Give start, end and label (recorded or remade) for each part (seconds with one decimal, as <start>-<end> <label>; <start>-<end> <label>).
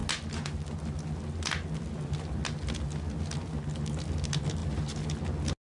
0.0-5.8 recorded